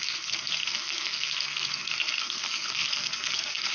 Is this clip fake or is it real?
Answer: fake